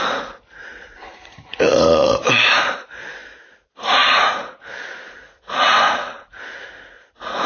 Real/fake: fake